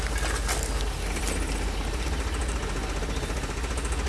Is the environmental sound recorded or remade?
recorded